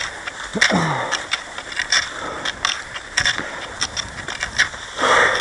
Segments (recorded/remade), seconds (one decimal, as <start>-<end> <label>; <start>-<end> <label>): 0.0-5.4 recorded